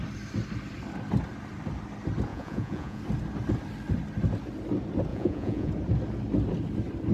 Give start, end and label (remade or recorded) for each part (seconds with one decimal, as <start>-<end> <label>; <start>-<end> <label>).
0.0-2.3 recorded; 2.3-3.0 remade; 3.0-5.1 recorded; 5.1-5.7 remade; 5.7-7.1 recorded